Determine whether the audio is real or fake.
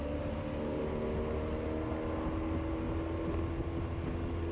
real